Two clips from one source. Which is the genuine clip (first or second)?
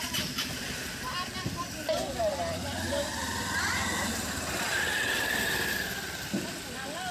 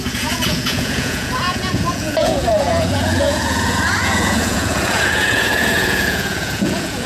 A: first